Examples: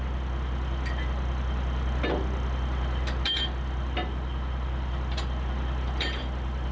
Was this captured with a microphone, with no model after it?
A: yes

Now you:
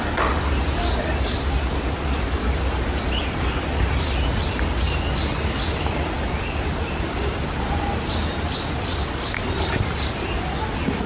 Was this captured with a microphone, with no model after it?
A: yes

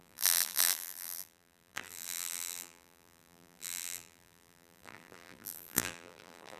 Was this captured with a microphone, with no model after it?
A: no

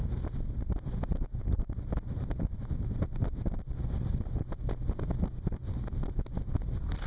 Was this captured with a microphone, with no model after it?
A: yes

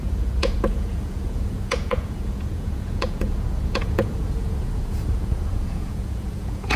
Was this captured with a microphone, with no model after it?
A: no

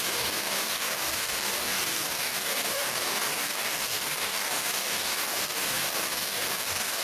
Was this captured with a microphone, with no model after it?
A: no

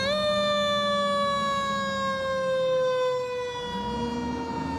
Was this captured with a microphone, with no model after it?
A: yes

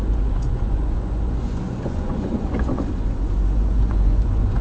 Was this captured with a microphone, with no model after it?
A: no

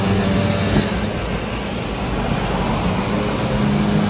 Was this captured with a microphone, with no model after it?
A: yes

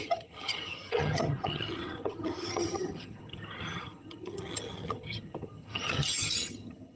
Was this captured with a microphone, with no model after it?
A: no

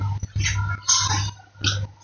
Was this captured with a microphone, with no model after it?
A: yes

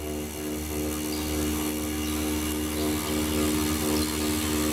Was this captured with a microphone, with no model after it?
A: yes